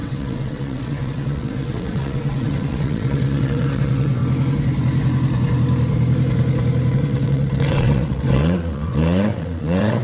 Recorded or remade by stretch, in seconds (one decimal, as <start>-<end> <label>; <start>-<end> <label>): 0.0-4.2 remade; 4.2-6.9 recorded; 6.9-10.0 remade